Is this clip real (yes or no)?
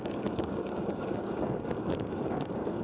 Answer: no